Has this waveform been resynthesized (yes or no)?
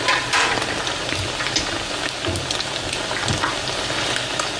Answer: no